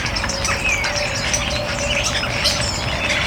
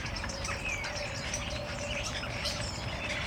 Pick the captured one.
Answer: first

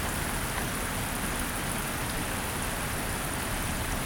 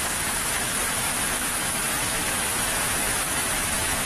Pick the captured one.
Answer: first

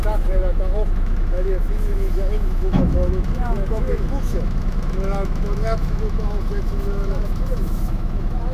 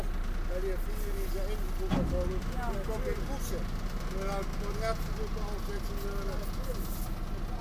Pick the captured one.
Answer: second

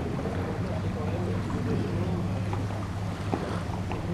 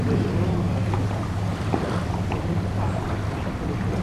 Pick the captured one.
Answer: first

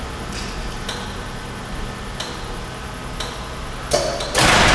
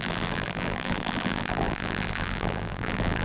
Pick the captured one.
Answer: first